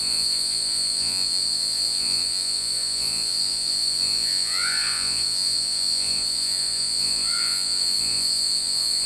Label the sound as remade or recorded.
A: remade